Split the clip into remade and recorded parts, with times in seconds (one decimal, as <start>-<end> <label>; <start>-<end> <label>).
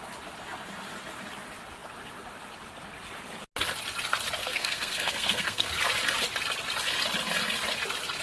0.0-4.4 recorded; 4.4-5.7 remade; 5.7-8.2 recorded